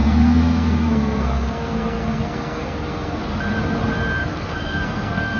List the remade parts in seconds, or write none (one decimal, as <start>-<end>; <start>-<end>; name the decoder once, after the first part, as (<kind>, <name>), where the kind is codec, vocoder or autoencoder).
0.0-3.2 (codec, SNAC); 4.2-5.4